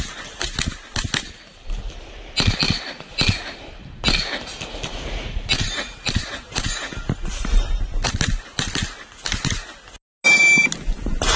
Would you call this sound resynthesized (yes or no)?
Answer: no